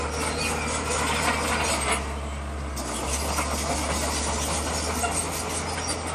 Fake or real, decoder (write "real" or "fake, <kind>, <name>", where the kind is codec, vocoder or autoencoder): real